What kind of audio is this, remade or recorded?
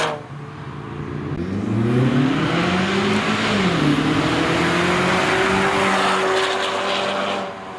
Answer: recorded